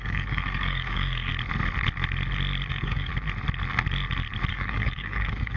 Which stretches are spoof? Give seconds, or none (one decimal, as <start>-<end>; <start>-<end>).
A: 0.0-1.3; 2.7-3.1; 4.5-5.6